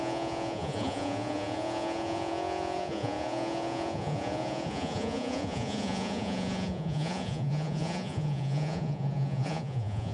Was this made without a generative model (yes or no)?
no